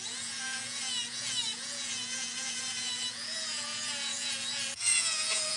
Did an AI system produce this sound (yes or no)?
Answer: yes